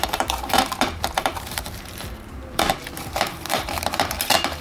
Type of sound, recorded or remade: remade